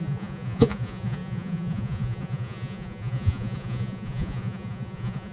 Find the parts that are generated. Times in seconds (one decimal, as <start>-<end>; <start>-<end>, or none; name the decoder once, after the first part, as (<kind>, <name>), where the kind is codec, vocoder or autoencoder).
0.0-5.3 (vocoder, Vocos)